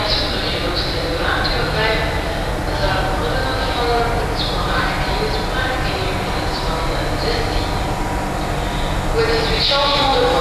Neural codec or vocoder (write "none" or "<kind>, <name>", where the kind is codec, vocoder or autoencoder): none